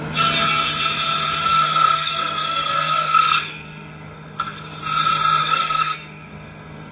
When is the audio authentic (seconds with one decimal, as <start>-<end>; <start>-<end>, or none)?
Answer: 0.0-1.4; 4.6-5.4